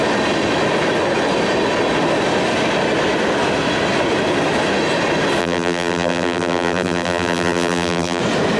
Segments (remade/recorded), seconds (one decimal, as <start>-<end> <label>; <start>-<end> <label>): 0.0-5.4 recorded; 5.4-8.2 remade; 8.2-8.6 recorded

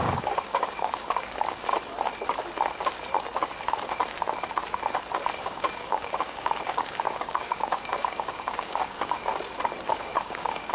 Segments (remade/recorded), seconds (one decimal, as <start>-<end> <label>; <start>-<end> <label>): 0.0-1.7 remade; 1.7-5.4 recorded; 5.4-9.3 remade; 9.3-9.9 recorded; 9.9-10.7 remade